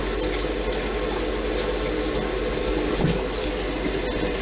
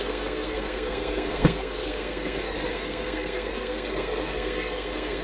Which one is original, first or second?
first